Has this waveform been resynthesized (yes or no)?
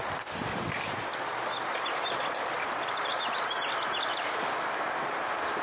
no